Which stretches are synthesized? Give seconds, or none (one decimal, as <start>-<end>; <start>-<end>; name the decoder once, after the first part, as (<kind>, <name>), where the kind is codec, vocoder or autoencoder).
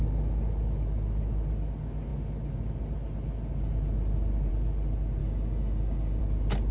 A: 5.2-6.2 (codec, DAC)